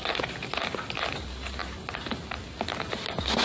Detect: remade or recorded recorded